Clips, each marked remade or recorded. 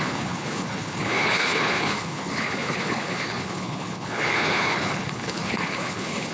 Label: remade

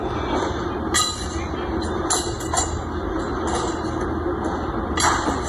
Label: recorded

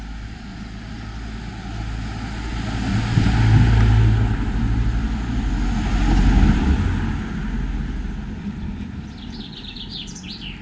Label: recorded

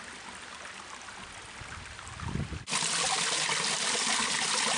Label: recorded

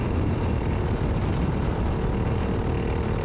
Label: recorded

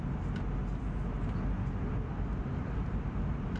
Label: recorded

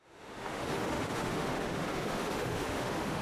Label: remade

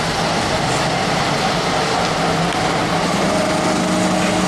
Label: recorded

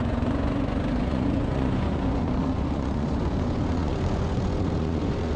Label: remade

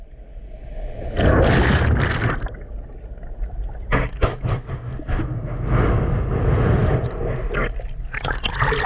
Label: recorded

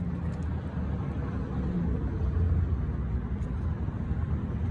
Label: recorded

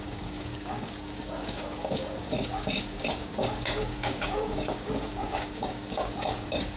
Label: remade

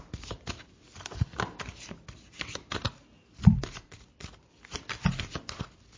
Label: recorded